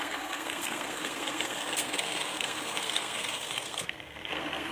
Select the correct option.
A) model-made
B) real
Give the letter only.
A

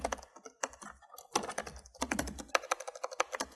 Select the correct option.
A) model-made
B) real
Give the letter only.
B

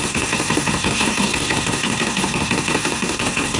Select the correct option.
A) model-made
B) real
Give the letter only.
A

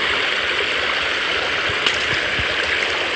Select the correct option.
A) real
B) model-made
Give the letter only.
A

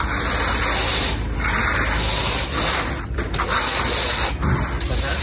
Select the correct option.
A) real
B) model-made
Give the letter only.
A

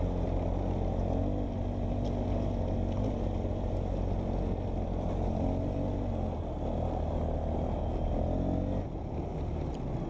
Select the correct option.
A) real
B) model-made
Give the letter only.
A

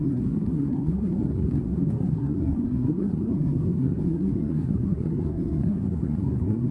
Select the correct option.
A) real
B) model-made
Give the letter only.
B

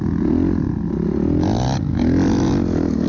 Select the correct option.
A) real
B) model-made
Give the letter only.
A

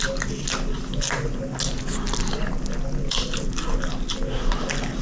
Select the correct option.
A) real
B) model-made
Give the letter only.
A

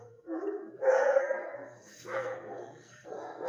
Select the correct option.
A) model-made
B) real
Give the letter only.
A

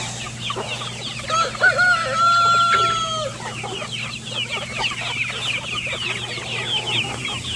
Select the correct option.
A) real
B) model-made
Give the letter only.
A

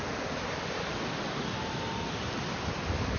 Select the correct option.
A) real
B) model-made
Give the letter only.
A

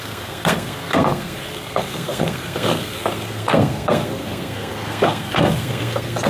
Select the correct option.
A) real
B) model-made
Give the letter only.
B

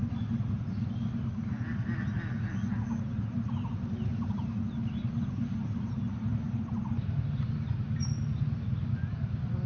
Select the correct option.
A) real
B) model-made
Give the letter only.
A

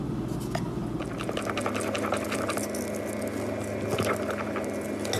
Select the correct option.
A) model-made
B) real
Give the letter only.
B